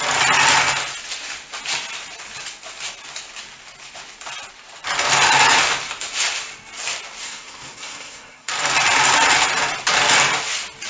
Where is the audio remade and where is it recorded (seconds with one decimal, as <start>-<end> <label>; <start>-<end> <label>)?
0.0-7.2 recorded; 7.2-8.5 remade; 8.5-10.9 recorded